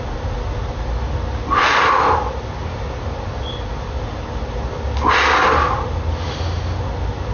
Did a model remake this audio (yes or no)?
no